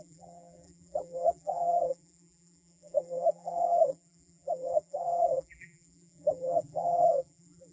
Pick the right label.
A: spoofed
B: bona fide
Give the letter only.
A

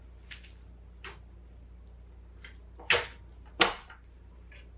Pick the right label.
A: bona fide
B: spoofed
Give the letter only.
A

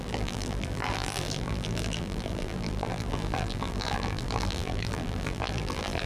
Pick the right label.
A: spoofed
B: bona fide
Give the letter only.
A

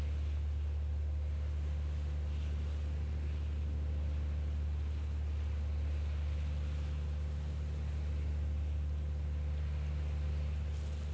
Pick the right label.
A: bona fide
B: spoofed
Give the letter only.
A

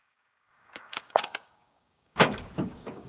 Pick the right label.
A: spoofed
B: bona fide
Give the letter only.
A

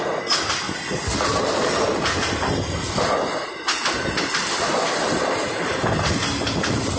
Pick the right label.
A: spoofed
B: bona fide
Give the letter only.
B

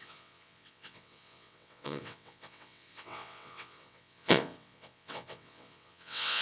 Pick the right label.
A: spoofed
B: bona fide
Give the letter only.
A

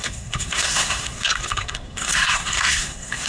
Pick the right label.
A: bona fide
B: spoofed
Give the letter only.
B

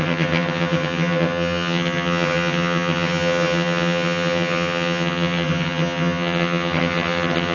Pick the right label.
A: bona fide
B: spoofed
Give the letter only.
B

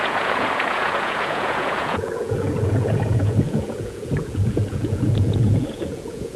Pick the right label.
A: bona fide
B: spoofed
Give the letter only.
B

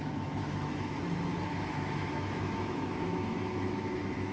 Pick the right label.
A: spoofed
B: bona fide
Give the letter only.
A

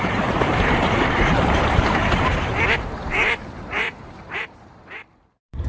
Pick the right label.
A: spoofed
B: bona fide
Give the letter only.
A